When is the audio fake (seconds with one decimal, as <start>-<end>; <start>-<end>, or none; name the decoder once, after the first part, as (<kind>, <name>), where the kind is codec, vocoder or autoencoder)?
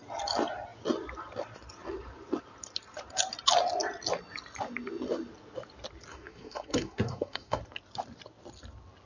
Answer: 6.1-7.6 (codec, SNAC)